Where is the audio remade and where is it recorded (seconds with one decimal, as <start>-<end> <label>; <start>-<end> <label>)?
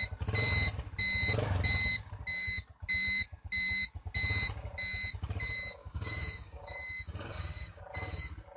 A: 0.0-5.8 recorded; 5.8-7.8 remade; 7.8-8.6 recorded